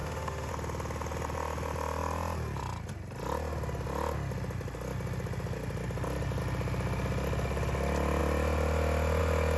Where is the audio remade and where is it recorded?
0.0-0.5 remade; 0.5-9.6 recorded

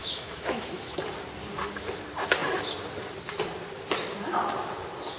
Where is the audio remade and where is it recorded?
0.0-1.0 remade; 1.0-5.2 recorded